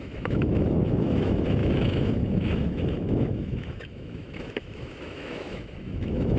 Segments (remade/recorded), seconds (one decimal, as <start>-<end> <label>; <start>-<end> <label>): 0.0-6.4 remade